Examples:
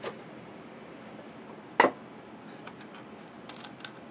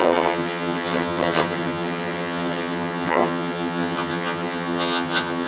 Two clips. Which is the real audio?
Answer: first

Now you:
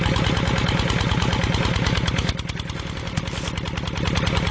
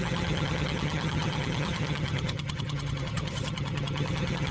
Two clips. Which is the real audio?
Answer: first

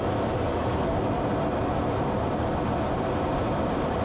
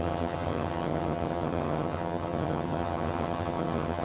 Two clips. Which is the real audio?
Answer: first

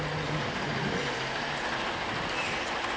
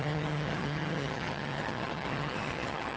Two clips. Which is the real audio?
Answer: first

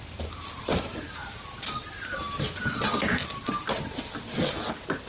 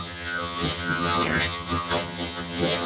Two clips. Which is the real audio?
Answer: first